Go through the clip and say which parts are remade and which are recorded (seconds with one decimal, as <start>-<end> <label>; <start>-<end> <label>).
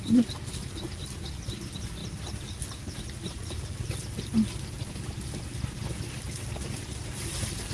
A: 0.0-7.7 recorded